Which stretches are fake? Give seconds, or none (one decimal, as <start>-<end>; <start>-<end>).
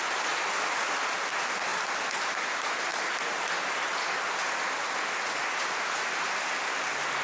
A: none